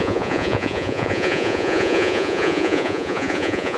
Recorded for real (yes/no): no